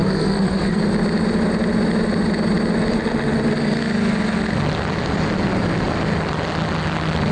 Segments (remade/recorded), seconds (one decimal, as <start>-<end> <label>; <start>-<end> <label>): 0.0-0.8 remade; 0.8-7.3 recorded

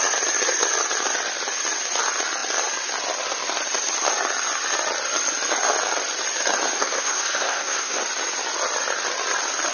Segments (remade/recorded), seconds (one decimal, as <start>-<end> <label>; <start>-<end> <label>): 0.0-6.8 recorded; 6.8-8.0 remade; 8.0-9.7 recorded

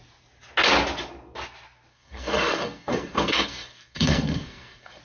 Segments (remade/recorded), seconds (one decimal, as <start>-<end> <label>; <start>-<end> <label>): 0.0-1.9 recorded; 1.9-5.0 remade

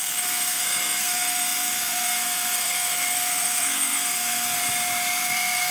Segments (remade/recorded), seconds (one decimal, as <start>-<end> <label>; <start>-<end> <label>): 0.0-4.6 remade; 4.6-5.2 recorded; 5.2-5.7 remade

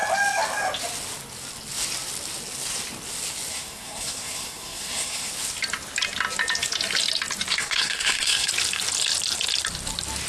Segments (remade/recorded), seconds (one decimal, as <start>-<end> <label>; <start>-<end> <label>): 0.0-3.5 recorded; 3.5-5.3 remade; 5.3-7.5 recorded; 7.5-8.5 remade; 8.5-10.3 recorded